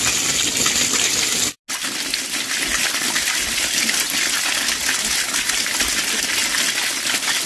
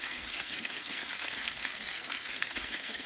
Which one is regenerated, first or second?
second